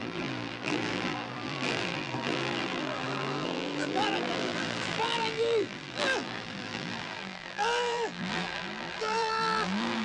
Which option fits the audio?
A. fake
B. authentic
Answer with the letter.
A